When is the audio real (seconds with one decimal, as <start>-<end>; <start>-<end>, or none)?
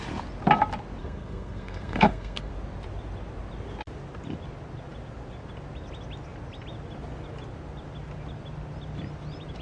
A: 0.0-1.0; 2.5-9.6